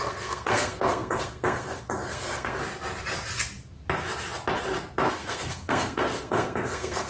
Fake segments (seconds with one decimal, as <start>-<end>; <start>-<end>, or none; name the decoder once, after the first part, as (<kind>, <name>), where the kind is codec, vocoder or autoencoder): 0.0-2.6 (codec, SNAC); 5.1-7.1